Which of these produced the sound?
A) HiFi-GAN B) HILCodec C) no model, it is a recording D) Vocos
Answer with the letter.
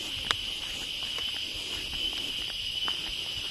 C